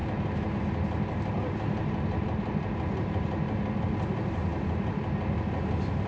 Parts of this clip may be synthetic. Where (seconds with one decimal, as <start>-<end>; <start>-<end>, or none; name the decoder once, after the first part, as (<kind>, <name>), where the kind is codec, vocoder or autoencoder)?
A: none